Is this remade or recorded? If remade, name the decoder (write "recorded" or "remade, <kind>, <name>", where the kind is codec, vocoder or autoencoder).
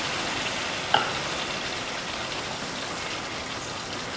recorded